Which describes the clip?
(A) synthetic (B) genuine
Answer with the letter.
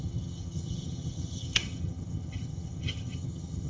A